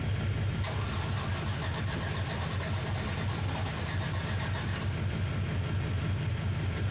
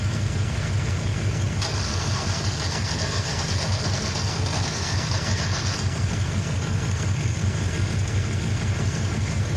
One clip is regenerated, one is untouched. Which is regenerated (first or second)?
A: second